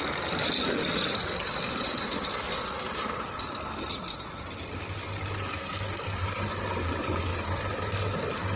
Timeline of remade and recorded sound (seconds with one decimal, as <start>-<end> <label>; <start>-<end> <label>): 0.0-8.6 recorded